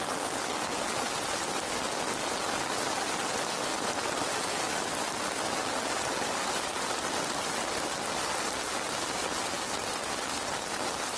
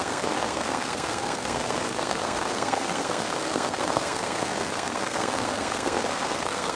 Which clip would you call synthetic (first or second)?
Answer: second